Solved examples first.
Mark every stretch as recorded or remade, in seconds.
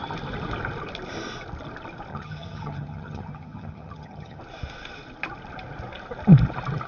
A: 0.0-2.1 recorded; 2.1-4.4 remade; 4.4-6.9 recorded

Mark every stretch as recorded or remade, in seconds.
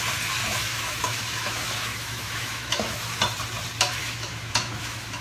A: 0.0-0.4 recorded; 0.4-3.2 remade; 3.2-4.0 recorded; 4.0-5.2 remade